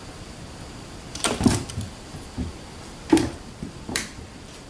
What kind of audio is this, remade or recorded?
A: remade